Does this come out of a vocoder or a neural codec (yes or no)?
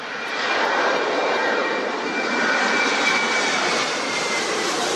yes